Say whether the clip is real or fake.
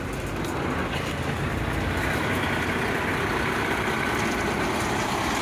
real